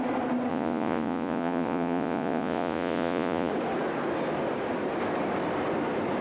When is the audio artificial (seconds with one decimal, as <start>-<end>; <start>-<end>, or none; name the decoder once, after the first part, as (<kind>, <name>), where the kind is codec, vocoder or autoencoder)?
0.5-3.5 (vocoder, Vocos)